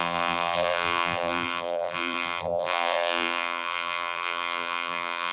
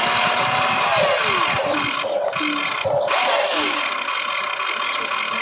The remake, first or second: first